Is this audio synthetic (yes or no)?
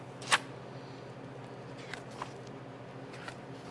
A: no